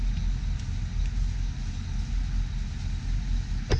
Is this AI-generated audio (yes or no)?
no